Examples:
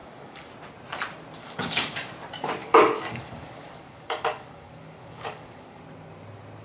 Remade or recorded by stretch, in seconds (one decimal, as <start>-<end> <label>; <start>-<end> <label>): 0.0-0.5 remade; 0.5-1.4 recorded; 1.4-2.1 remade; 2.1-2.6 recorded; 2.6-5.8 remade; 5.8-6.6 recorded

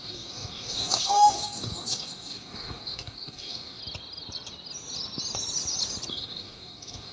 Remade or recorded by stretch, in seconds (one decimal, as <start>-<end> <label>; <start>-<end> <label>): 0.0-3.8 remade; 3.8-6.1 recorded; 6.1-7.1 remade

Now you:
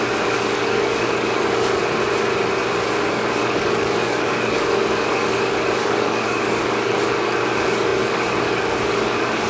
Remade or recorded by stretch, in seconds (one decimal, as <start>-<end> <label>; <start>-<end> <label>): 0.0-1.8 remade; 1.8-3.1 recorded; 3.1-9.5 remade

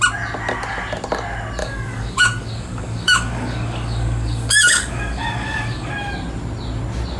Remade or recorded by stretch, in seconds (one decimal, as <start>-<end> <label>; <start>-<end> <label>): 0.0-1.6 recorded; 1.6-5.9 remade; 5.9-7.2 recorded

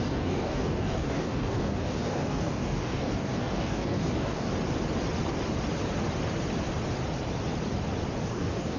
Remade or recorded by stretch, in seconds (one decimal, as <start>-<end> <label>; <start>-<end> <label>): 0.0-4.5 remade; 4.5-8.2 recorded; 8.2-8.8 remade

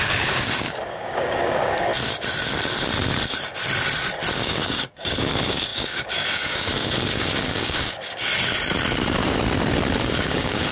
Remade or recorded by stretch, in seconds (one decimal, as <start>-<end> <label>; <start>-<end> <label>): 0.0-1.9 remade; 1.9-4.3 recorded; 4.3-8.3 remade; 8.3-10.1 recorded; 10.1-10.7 remade

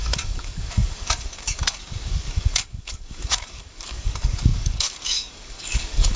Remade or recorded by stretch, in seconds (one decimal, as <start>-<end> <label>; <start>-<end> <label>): 0.0-6.2 remade